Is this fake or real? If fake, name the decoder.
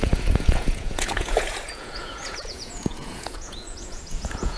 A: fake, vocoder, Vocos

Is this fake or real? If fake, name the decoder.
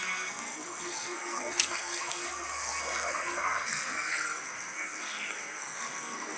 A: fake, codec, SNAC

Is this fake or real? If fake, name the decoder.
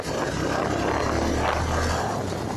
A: real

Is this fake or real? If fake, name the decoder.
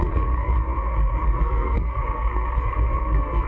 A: fake, codec, SNAC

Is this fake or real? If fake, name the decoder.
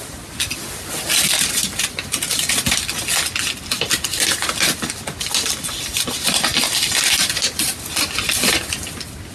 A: real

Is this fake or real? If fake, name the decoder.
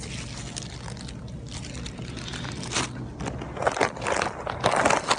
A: real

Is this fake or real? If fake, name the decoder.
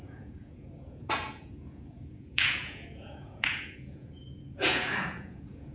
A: fake, vocoder, Vocos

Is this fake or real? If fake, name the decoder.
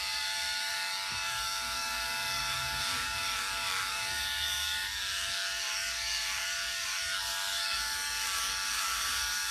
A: fake, codec, DAC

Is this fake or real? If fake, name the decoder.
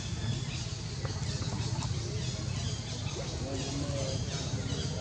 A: real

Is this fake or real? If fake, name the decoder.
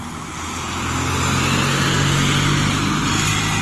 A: real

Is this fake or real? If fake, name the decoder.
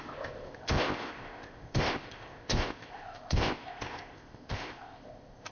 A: fake, codec, ZipCodec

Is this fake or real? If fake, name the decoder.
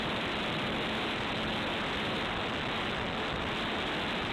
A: fake, vocoder, BigVGAN v2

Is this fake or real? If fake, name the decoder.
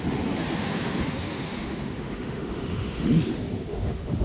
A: fake, autoencoder, DAC-VAE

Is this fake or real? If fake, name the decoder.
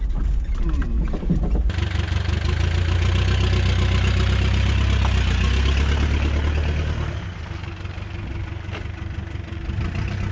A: real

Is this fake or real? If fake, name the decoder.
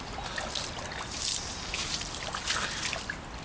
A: real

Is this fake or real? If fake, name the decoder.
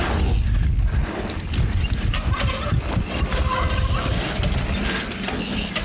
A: real